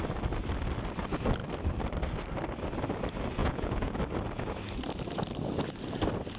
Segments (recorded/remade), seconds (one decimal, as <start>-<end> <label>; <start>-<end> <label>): 0.0-3.4 recorded; 3.4-4.0 remade; 4.0-6.4 recorded